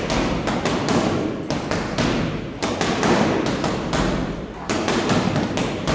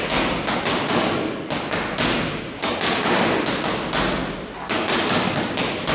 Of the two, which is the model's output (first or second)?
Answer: first